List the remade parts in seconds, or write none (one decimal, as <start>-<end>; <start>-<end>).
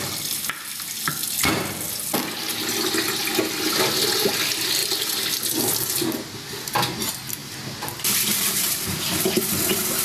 7.4-9.4